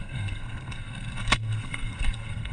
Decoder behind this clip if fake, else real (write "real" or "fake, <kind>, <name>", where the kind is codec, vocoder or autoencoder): fake, codec, SNAC